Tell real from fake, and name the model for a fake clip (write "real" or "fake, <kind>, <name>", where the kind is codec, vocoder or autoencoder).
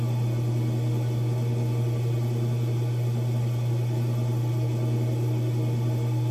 real